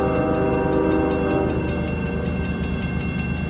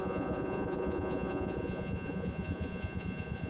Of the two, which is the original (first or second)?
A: first